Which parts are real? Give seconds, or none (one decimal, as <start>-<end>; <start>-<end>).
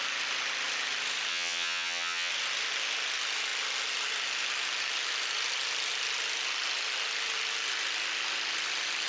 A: 0.0-1.3; 2.3-9.1